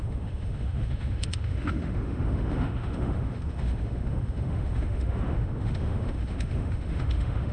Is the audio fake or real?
fake